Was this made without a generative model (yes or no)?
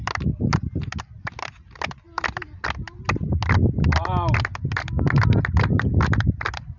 yes